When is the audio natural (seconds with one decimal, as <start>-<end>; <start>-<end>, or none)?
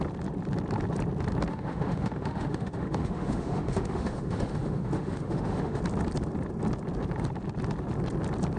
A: 0.0-1.5; 5.8-8.6